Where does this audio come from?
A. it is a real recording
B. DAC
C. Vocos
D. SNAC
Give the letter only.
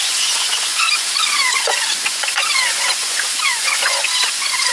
C